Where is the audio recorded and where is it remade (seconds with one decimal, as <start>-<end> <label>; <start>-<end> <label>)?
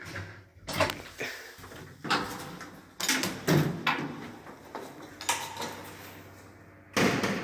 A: 0.0-7.4 recorded